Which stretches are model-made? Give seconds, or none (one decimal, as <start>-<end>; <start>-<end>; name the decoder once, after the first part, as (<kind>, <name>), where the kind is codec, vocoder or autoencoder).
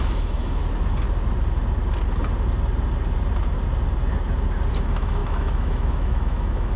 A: 0.0-0.6 (autoencoder, DAC-VAE); 4.7-6.8